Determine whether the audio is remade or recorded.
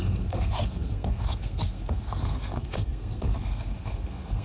remade